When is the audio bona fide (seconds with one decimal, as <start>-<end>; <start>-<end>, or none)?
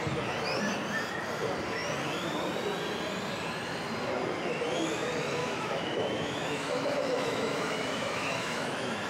0.0-5.4